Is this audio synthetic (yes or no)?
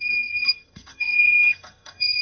yes